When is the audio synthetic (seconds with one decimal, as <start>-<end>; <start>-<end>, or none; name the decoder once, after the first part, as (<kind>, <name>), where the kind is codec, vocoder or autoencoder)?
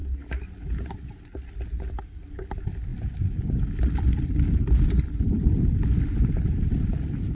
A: none